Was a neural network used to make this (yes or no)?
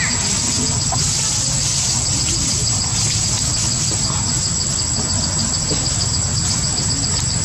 no